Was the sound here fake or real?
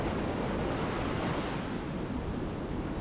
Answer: real